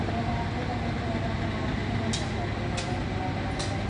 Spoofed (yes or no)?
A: no